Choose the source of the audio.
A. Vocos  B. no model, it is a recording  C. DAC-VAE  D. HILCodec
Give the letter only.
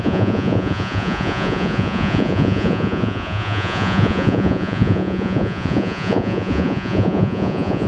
A